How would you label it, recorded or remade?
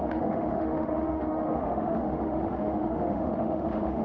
remade